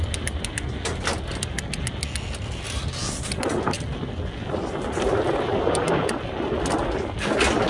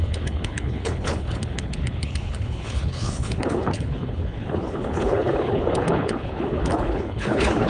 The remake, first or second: second